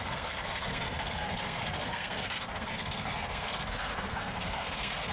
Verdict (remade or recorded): remade